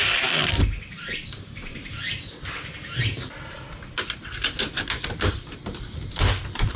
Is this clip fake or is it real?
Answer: real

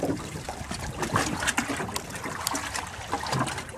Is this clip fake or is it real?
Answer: real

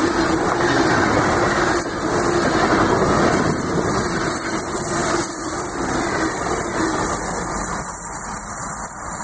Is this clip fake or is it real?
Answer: real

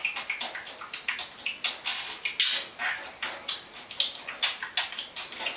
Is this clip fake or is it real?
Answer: real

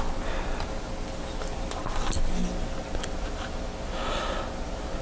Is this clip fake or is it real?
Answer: real